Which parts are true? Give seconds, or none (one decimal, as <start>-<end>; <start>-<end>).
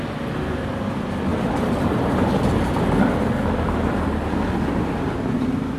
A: 0.0-5.8